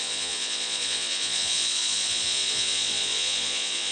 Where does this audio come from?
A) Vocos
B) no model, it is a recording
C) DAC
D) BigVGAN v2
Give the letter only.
A